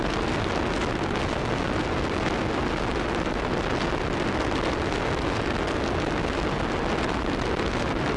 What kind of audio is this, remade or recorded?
recorded